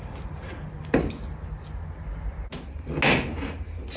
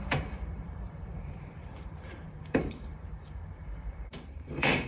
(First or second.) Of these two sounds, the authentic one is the first